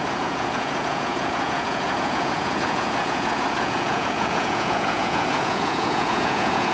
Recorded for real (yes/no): no